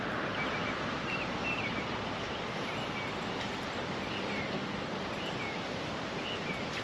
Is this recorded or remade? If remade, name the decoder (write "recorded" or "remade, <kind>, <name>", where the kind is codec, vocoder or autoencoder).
remade, vocoder, BigVGAN v2